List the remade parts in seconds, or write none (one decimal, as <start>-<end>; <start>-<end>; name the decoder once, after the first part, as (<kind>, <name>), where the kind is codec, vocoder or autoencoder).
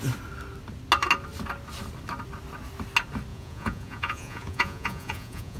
3.3-5.6 (vocoder, Vocos)